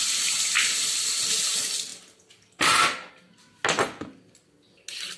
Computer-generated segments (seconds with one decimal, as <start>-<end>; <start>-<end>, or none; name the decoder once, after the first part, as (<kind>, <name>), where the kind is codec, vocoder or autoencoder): none